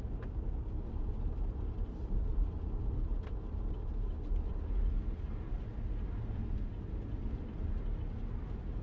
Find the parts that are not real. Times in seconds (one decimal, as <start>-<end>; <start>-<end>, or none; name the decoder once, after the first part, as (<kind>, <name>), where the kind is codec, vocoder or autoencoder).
none